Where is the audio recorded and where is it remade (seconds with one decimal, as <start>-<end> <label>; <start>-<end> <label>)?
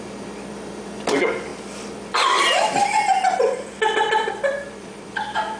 0.0-5.6 remade